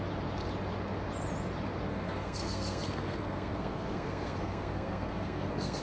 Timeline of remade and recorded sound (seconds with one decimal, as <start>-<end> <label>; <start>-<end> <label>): 0.0-1.9 recorded; 1.9-5.8 remade